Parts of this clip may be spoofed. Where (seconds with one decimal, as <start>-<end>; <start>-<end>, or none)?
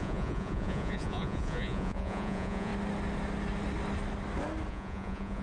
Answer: 0.0-2.7; 4.7-5.4